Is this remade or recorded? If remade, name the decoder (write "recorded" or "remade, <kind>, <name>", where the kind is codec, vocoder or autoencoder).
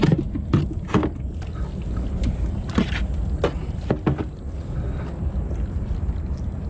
recorded